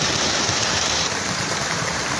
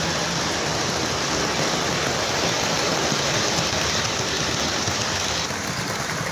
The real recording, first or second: second